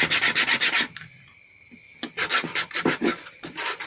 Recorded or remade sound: recorded